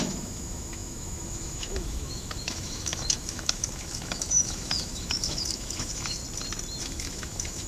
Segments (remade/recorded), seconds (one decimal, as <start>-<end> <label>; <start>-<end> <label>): 0.0-6.2 remade; 6.2-6.8 recorded; 6.8-7.7 remade